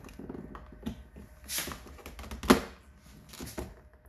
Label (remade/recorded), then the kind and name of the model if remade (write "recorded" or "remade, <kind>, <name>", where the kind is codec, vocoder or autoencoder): recorded